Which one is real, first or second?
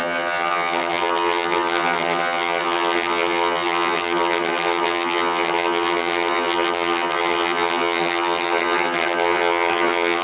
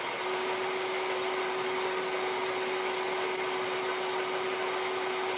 second